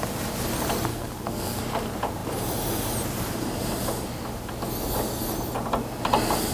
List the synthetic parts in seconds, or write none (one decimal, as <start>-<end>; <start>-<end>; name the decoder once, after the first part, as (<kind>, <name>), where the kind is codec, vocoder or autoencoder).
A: 0.9-1.6 (codec, SNAC)